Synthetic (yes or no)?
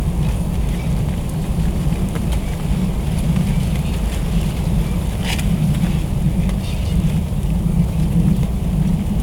no